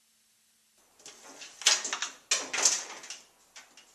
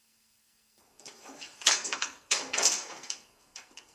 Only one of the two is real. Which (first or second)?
first